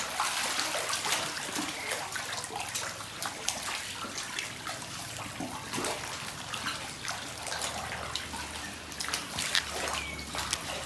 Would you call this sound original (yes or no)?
yes